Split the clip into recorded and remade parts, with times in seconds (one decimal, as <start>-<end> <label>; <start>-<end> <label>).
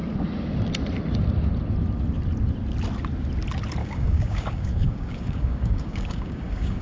0.0-3.8 recorded; 3.8-6.8 remade